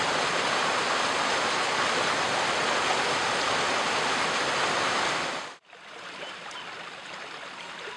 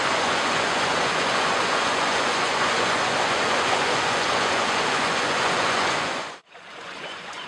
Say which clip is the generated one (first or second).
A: second